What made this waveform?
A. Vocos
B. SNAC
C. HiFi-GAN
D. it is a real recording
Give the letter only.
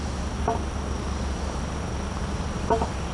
D